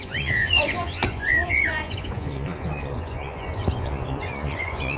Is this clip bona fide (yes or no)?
no